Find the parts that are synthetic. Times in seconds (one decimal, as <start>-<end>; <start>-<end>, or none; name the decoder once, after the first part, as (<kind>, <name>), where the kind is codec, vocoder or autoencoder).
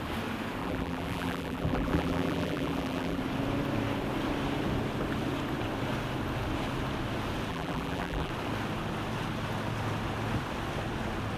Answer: 0.6-3.2 (vocoder, BigVGAN v2); 7.5-8.3